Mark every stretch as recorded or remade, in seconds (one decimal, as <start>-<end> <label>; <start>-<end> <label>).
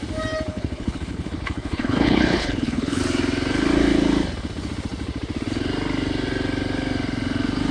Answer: 0.0-0.5 recorded; 0.5-3.0 remade; 3.0-7.7 recorded